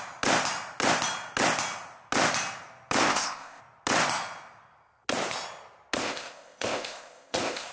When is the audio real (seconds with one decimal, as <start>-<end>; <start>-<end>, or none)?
0.0-3.0; 3.6-6.0